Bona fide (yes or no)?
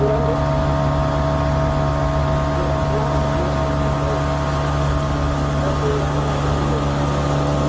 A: yes